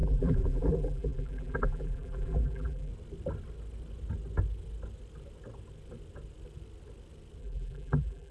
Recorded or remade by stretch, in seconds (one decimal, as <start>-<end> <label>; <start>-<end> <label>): 0.0-2.9 remade; 2.9-7.4 recorded; 7.4-8.3 remade